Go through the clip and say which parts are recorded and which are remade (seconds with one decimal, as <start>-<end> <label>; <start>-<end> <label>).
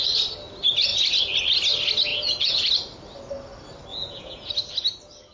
0.0-2.1 recorded; 2.1-2.7 remade; 2.7-3.9 recorded; 3.9-4.5 remade; 4.5-5.3 recorded